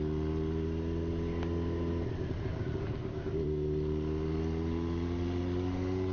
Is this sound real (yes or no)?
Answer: yes